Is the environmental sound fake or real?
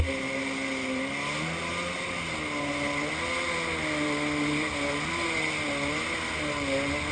real